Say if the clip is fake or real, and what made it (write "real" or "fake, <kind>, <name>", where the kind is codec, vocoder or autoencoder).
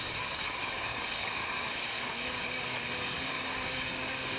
fake, codec, DAC